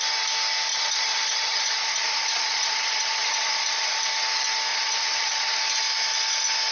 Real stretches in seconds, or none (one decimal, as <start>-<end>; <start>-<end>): 0.0-0.7; 4.0-4.7; 5.6-6.7